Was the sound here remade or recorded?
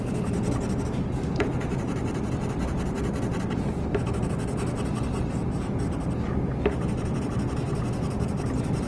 recorded